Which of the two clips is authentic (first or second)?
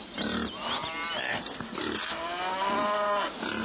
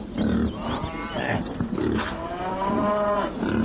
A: first